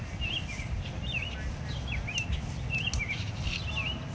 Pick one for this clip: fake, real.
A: real